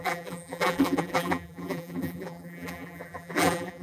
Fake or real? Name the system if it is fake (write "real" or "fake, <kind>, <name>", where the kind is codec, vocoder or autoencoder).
fake, vocoder, BigVGAN v2